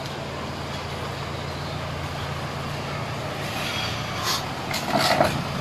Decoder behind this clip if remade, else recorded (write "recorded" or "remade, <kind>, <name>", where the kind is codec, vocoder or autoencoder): recorded